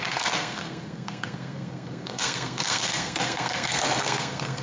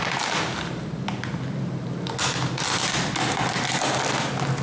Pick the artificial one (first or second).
first